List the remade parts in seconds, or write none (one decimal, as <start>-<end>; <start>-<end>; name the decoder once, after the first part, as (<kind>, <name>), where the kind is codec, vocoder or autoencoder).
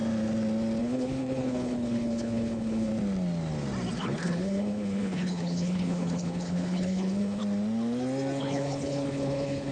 0.8-2.9 (codec, HILCodec); 4.0-7.4; 8.4-9.7